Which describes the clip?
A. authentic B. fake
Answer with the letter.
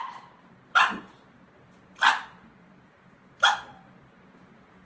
A